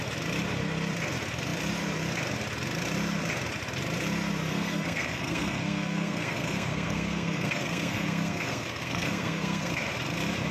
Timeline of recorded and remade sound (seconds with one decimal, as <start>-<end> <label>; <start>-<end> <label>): 0.0-4.5 recorded; 4.5-9.7 remade; 9.7-10.5 recorded